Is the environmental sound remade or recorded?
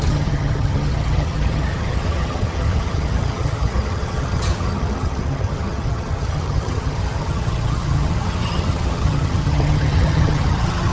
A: remade